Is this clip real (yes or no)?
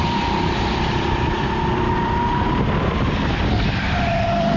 yes